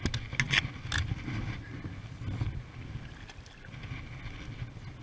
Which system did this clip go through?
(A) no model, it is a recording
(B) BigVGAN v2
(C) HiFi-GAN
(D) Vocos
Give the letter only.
A